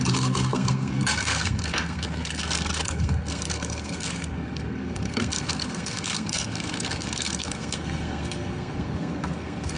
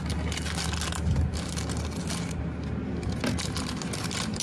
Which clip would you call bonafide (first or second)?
second